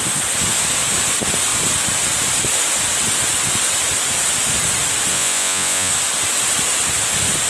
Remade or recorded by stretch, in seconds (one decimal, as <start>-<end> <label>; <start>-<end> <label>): 0.0-5.1 recorded; 5.1-5.9 remade; 5.9-7.5 recorded